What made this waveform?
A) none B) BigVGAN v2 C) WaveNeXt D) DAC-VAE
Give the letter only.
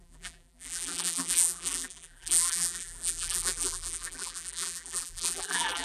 B